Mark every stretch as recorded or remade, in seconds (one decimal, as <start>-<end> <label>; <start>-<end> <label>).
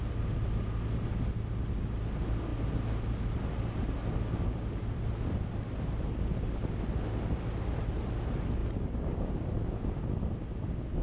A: 0.0-8.6 recorded; 8.6-9.3 remade; 9.3-11.0 recorded